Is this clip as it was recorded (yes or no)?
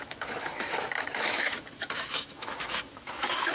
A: no